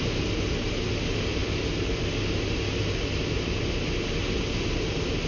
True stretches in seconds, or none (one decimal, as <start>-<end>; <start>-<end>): 0.0-5.3